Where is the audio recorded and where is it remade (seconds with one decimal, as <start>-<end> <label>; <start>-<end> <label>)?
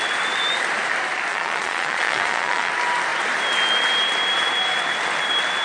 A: 0.0-1.3 recorded; 1.3-2.7 remade; 2.7-5.6 recorded